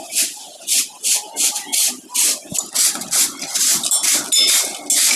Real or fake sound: real